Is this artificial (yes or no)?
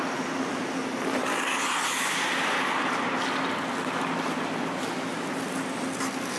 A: no